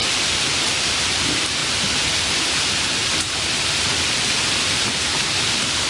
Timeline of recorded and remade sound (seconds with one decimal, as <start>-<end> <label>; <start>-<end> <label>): 0.0-1.6 remade; 1.6-2.6 recorded; 2.6-5.9 remade